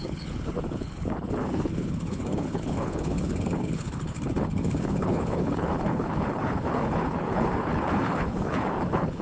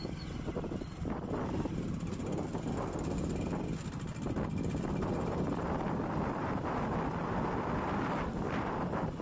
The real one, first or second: second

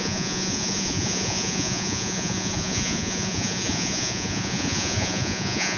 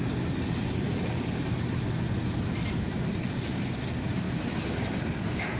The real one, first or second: second